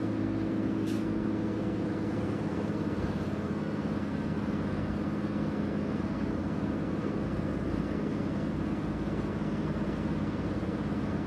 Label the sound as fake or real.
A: fake